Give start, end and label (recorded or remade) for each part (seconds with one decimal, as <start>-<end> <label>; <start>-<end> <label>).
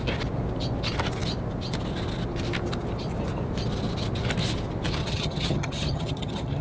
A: 0.0-5.0 recorded; 5.0-6.6 remade